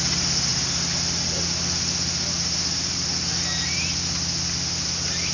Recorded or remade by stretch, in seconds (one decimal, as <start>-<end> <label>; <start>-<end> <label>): 0.0-5.3 recorded